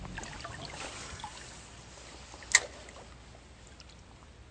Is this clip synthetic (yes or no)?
no